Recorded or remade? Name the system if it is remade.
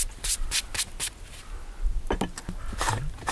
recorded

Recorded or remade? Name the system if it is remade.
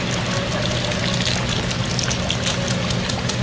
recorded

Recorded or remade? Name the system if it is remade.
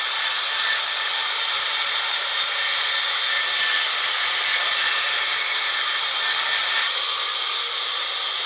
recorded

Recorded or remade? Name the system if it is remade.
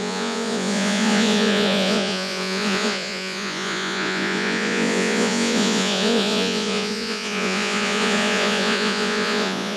remade, vocoder, Vocos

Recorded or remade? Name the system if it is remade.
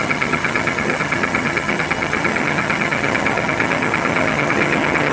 remade, vocoder, HiFi-GAN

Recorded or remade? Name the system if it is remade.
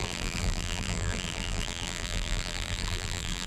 remade, vocoder, BigVGAN v2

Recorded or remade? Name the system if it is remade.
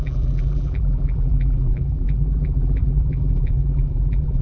remade, vocoder, BigVGAN v2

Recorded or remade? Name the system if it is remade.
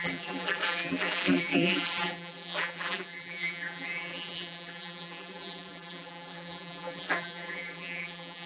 remade, vocoder, BigVGAN v2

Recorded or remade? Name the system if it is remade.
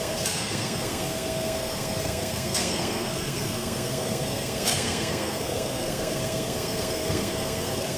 remade, codec, SNAC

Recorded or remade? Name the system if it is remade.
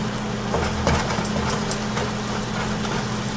recorded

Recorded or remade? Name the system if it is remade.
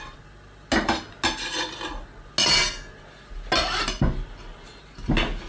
recorded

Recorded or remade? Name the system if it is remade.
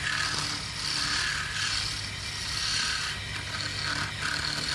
recorded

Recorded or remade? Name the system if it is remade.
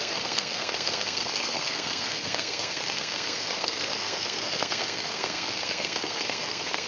remade, codec, SNAC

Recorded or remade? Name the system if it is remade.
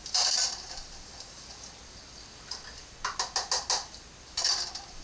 recorded